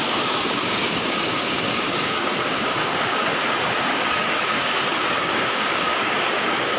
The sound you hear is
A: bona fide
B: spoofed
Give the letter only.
B